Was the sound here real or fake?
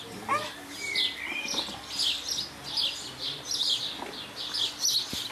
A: real